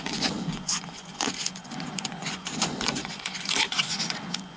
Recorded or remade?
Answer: remade